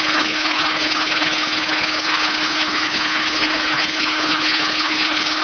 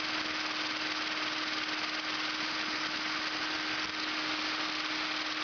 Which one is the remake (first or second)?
first